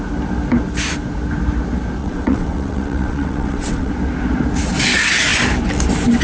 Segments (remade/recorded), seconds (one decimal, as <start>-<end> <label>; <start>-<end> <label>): 0.0-2.0 recorded; 2.0-3.9 remade; 3.9-6.2 recorded